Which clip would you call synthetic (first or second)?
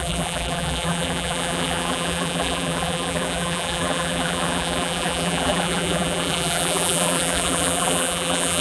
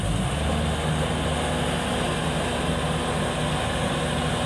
first